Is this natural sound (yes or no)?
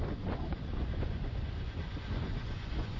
no